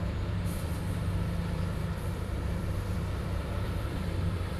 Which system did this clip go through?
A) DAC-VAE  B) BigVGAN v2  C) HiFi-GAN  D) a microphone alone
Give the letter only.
B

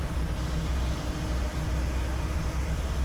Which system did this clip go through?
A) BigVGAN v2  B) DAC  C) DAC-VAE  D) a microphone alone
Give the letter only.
A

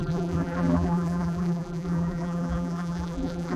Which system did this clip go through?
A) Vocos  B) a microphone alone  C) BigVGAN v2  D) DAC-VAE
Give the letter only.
C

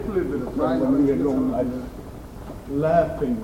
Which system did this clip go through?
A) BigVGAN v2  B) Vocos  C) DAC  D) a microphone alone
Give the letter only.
D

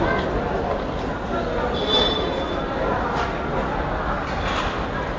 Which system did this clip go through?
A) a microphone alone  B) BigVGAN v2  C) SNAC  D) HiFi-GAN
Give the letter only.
A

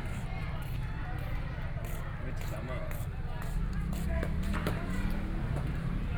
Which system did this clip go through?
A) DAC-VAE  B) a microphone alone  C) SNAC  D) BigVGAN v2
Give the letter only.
B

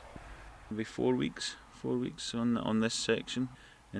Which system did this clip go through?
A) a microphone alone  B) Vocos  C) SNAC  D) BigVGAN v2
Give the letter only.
A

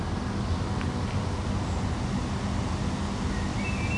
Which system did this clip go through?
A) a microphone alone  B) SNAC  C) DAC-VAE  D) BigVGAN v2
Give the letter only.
A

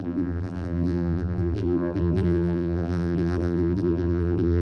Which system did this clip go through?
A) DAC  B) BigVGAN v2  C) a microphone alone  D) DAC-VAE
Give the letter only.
B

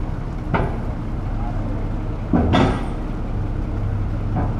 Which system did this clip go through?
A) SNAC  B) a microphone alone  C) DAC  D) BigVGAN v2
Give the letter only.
B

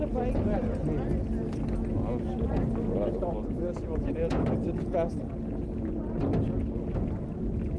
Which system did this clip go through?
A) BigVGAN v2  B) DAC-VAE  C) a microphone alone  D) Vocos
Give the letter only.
C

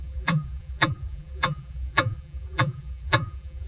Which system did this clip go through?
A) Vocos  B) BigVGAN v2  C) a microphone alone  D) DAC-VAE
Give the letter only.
B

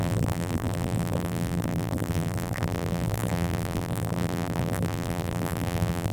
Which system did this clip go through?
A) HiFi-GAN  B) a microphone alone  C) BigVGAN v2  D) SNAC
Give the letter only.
C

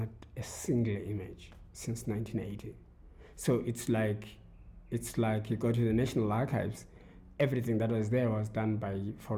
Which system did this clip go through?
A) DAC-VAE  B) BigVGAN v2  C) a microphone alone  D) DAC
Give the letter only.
C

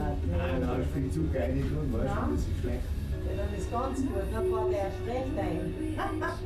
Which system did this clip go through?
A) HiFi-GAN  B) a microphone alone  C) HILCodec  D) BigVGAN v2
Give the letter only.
B